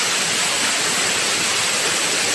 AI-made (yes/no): no